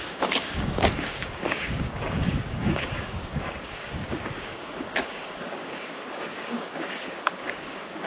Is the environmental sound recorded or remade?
remade